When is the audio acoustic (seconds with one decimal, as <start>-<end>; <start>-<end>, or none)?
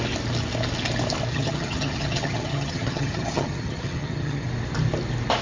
0.0-1.3; 4.5-5.4